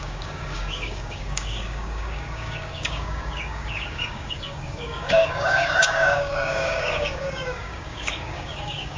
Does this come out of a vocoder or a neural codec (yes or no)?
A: yes